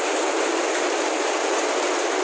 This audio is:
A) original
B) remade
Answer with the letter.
A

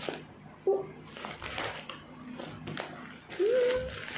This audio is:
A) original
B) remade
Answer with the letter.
A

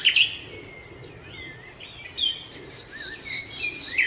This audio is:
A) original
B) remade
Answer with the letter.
A